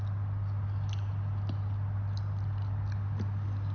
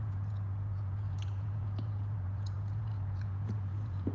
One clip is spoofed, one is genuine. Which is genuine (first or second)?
first